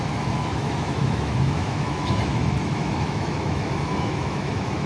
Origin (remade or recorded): remade